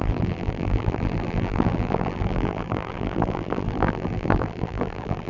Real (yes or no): no